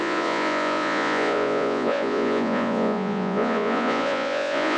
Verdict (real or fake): fake